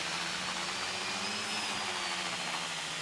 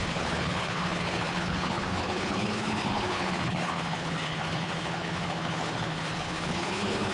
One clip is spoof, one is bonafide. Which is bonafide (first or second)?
first